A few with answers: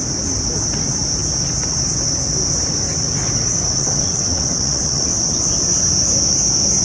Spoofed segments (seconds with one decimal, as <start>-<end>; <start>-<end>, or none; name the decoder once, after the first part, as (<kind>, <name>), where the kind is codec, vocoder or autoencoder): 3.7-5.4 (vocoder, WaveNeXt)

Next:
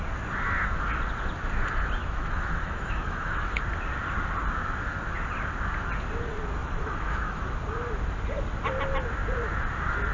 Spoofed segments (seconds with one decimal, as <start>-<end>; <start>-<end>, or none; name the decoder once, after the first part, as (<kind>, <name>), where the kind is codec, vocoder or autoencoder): 2.0-3.6 (autoencoder, DAC-VAE); 6.6-7.5

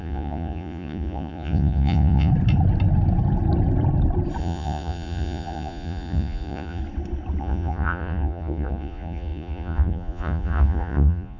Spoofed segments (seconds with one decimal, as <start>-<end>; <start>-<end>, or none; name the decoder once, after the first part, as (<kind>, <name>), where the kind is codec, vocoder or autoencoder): 0.0-2.3 (vocoder, Vocos); 4.4-6.8; 7.4-11.4